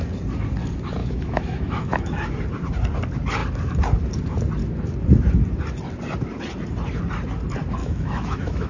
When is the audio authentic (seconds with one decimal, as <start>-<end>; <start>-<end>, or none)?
0.0-1.0; 2.3-7.8